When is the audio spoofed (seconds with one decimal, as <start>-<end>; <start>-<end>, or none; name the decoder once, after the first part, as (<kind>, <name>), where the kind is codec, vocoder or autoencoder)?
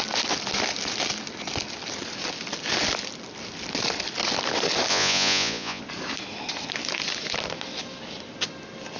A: 4.9-5.8 (vocoder, Vocos)